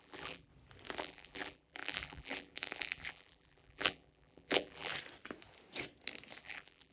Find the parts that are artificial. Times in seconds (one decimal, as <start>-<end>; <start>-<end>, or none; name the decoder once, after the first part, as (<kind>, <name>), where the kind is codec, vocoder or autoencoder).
0.0-0.5 (vocoder, BigVGAN v2); 1.0-4.9; 6.4-6.9